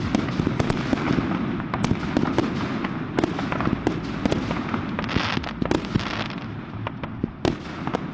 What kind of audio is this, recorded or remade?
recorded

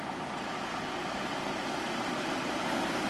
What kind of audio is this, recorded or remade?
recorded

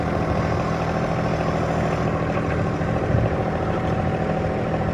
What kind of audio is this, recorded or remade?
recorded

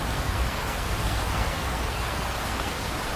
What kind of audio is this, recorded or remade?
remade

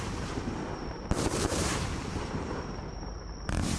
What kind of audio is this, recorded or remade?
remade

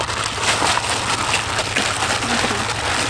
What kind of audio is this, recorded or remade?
recorded